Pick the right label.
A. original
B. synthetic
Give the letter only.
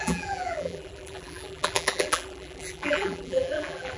B